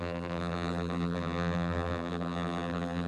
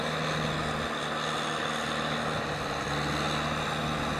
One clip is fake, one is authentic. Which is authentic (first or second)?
second